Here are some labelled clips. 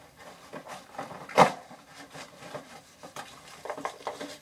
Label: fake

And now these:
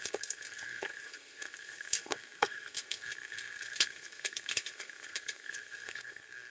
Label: fake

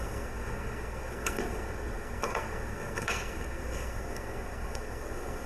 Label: fake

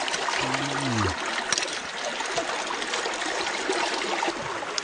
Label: real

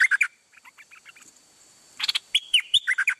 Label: fake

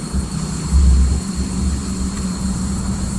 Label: fake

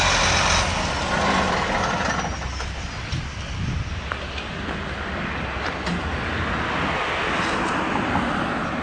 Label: real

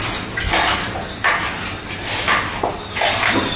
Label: real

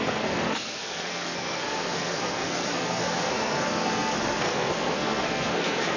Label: fake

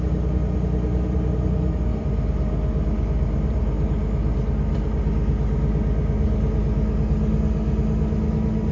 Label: real